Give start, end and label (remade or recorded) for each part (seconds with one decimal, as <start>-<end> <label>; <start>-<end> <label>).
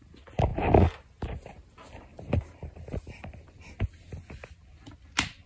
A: 0.0-0.5 recorded; 0.5-1.2 remade; 1.2-2.1 recorded; 2.1-3.4 remade; 3.4-5.5 recorded